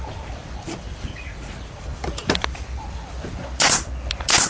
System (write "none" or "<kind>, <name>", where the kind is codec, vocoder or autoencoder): none